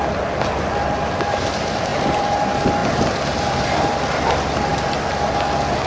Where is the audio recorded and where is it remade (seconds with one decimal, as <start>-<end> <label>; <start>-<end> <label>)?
0.0-1.5 recorded; 1.5-4.7 remade; 4.7-5.9 recorded